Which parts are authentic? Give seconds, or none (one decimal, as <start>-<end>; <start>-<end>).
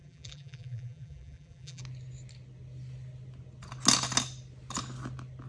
1.8-5.5